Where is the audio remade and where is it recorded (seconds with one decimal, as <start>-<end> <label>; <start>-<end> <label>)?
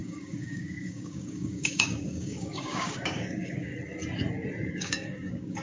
0.0-3.7 remade; 3.7-4.7 recorded; 4.7-5.6 remade